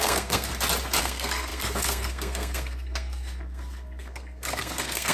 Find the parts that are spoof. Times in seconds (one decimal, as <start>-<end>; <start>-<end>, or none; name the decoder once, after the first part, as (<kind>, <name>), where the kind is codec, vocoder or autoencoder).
0.0-0.5 (codec, SNAC); 1.0-5.1